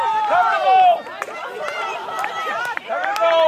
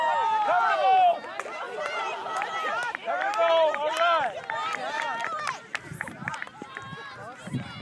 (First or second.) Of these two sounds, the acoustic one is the second